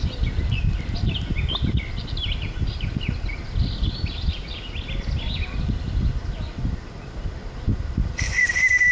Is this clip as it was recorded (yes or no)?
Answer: yes